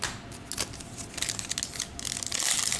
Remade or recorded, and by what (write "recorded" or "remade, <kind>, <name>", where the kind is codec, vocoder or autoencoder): recorded